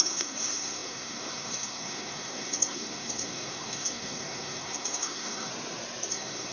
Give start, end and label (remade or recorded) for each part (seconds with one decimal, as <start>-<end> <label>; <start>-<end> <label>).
0.0-5.5 remade; 5.5-6.1 recorded; 6.1-6.5 remade